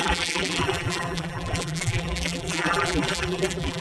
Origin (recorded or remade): remade